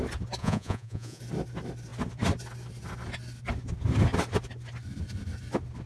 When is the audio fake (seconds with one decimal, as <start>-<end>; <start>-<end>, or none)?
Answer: 0.4-1.2